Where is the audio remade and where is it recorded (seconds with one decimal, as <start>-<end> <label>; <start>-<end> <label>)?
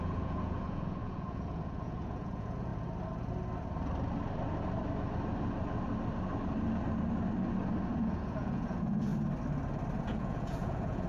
0.0-2.7 remade; 2.7-7.9 recorded; 7.9-9.1 remade; 9.1-10.0 recorded; 10.0-11.1 remade